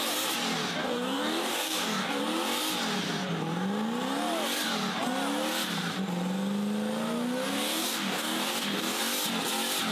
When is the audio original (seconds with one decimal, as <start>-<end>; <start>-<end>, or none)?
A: 0.0-0.8; 2.2-7.5; 9.0-9.9